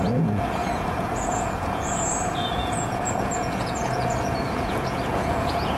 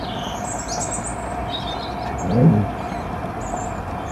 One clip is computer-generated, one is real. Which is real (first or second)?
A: second